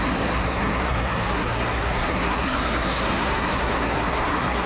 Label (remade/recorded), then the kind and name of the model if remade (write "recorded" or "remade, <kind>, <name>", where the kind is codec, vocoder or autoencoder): remade, codec, SNAC